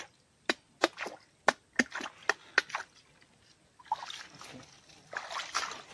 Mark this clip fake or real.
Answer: real